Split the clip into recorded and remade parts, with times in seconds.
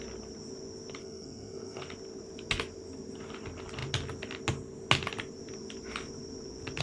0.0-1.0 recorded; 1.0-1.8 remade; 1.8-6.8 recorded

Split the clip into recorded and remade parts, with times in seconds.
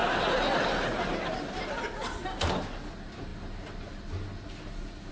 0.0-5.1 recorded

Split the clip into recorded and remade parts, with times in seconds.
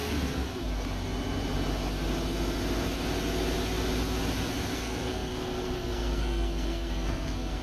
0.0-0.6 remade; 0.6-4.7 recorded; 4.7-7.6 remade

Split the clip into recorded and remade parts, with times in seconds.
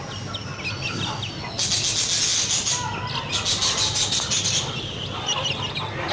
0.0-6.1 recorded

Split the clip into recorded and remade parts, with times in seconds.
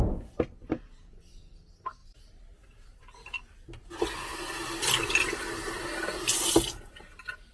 0.0-7.5 recorded